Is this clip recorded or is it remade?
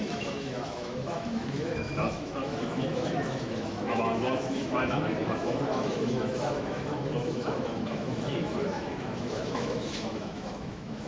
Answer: remade